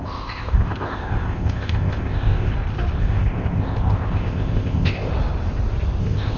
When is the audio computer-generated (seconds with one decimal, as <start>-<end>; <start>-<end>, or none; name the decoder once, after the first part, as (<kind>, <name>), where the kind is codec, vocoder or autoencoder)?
0.0-2.5 (codec, ZipCodec); 3.0-5.1; 6.0-6.4

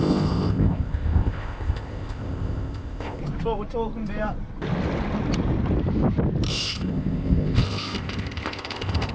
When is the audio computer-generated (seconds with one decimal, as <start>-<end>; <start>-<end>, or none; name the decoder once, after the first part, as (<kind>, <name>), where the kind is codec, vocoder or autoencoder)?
0.0-3.2 (codec, ZipCodec); 6.5-9.1

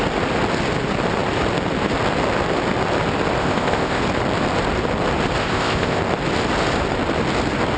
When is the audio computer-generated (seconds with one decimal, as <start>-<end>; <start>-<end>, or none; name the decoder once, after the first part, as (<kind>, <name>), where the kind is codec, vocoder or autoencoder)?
3.4-4.0 (codec, ZipCodec); 5.4-6.0